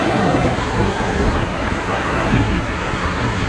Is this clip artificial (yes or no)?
yes